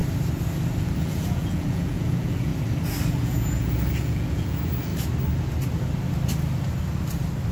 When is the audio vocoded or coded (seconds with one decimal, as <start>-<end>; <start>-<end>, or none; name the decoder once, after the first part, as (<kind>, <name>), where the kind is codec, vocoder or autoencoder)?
1.0-2.5 (vocoder, Vocos); 3.2-4.9